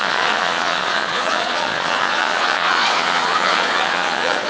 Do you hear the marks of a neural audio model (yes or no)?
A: yes